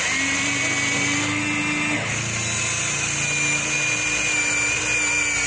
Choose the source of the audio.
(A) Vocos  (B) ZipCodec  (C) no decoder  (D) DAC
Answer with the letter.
C